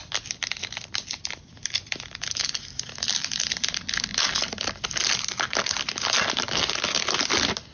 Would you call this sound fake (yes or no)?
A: no